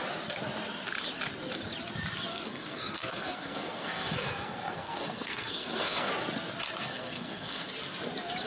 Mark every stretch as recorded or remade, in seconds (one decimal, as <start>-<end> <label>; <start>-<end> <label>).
0.0-2.3 recorded; 2.3-6.1 remade; 6.1-6.8 recorded; 6.8-7.7 remade; 7.7-8.5 recorded